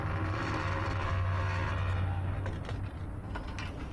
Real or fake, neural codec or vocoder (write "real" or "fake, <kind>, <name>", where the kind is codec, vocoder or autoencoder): real